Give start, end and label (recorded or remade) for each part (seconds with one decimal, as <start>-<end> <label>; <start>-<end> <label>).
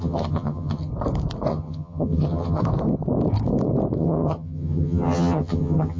0.0-0.9 remade; 0.9-1.5 recorded; 1.5-2.6 remade; 2.6-4.0 recorded; 4.0-6.0 remade